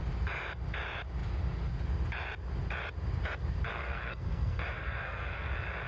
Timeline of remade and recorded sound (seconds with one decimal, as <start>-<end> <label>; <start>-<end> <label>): 0.0-3.7 recorded; 3.7-5.5 remade; 5.5-5.9 recorded